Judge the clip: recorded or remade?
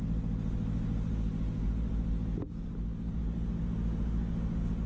recorded